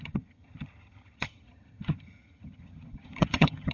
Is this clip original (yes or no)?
no